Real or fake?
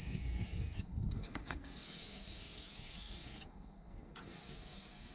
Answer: fake